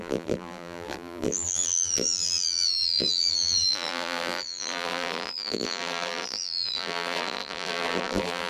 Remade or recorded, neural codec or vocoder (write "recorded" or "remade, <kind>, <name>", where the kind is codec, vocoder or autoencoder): remade, vocoder, BigVGAN v2